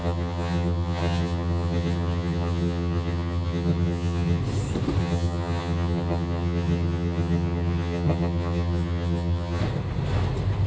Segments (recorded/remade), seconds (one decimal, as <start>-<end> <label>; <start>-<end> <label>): 0.0-4.4 remade; 4.4-5.0 recorded; 5.0-9.6 remade; 9.6-10.7 recorded

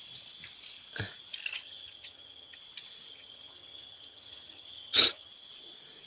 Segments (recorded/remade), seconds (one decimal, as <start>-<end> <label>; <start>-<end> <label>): 0.0-1.5 recorded; 1.5-2.6 remade; 2.6-3.1 recorded; 3.1-5.3 remade; 5.3-6.1 recorded

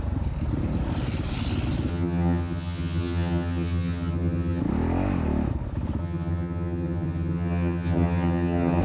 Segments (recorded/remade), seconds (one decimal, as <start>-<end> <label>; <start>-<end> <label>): 0.0-1.9 recorded; 1.9-4.6 remade; 4.6-6.0 recorded; 6.0-8.8 remade

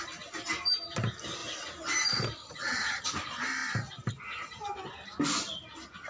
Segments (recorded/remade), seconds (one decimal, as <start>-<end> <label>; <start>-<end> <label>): 0.0-2.4 recorded; 2.4-3.1 remade; 3.1-6.1 recorded

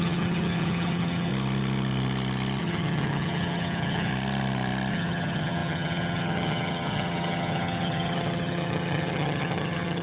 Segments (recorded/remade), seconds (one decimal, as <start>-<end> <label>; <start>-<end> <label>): 0.0-1.3 remade; 1.3-2.6 recorded; 2.6-4.1 remade; 4.1-4.9 recorded; 4.9-10.0 remade

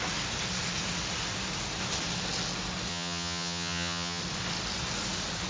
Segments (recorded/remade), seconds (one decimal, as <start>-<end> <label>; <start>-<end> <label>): 0.0-2.9 recorded; 2.9-4.2 remade; 4.2-5.5 recorded

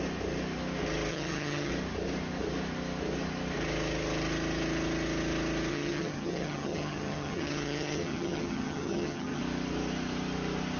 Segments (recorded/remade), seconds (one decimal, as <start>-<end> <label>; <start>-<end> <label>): 0.0-1.1 recorded; 1.1-1.7 remade; 1.7-5.7 recorded; 5.7-9.4 remade; 9.4-10.8 recorded

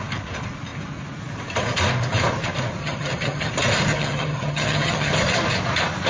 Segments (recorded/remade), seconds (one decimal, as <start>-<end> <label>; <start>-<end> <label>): 0.0-2.8 recorded; 2.8-3.5 remade; 3.5-3.9 recorded; 3.9-5.1 remade; 5.1-6.1 recorded